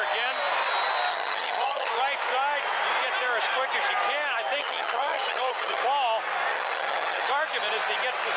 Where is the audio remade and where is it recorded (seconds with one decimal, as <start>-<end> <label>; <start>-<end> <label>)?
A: 0.0-1.1 recorded; 1.1-2.0 remade; 2.0-4.6 recorded; 4.6-5.8 remade; 5.8-6.5 recorded; 6.5-7.3 remade; 7.3-8.4 recorded